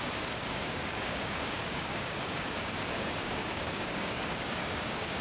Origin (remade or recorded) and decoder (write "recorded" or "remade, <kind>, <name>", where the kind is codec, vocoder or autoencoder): remade, codec, DAC